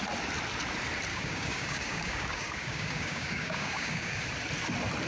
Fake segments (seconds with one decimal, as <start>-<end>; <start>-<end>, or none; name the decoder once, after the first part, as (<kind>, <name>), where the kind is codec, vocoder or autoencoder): 1.1-4.2 (codec, DAC)